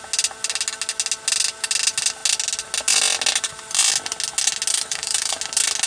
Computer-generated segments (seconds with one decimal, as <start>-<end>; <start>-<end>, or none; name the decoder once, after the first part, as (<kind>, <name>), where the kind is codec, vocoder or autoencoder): 4.7-5.4 (codec, DAC)